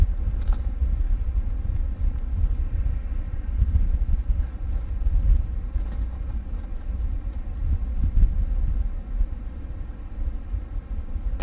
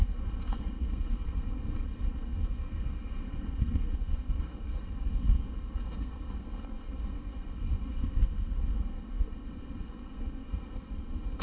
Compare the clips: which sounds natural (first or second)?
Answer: first